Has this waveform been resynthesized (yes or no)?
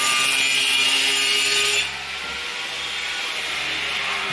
no